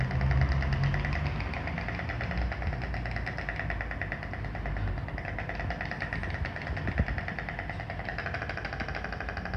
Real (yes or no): yes